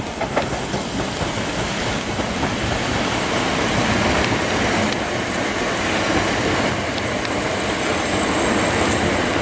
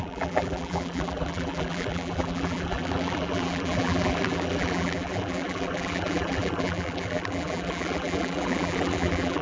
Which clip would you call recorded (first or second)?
first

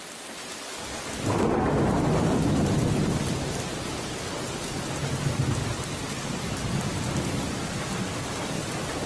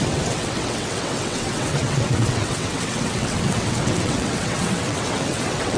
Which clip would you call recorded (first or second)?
first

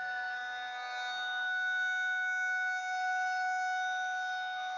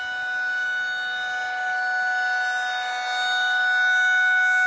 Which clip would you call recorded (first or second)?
second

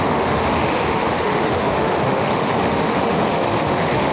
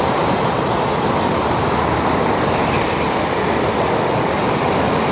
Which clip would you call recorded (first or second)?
second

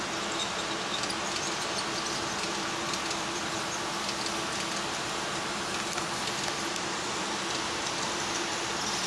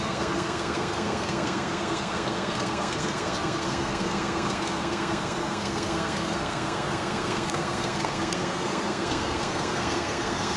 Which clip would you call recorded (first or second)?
first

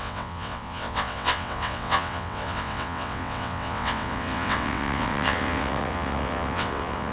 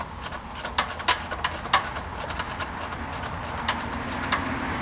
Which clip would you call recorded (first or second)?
second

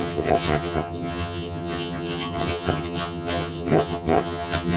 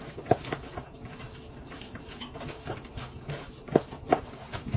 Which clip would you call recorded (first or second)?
second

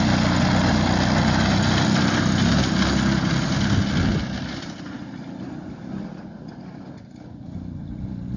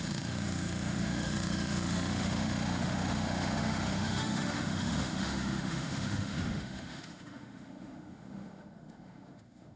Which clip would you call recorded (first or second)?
first